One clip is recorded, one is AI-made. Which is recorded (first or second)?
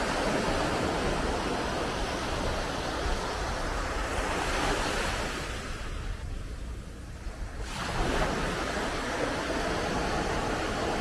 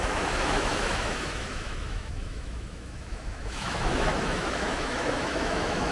first